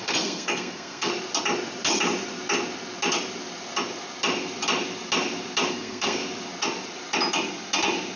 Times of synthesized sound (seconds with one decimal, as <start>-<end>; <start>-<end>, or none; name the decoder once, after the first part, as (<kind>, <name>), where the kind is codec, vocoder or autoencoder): 0.0-1.1 (codec, SNAC); 5.7-6.2